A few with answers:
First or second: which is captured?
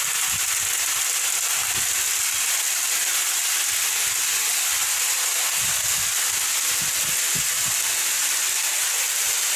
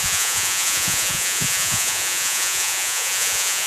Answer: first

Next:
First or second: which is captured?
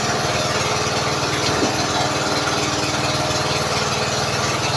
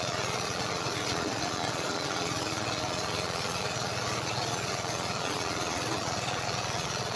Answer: first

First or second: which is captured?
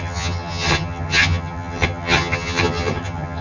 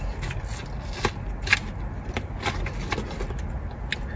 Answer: second